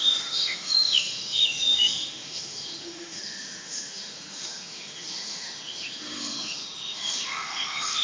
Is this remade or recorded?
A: remade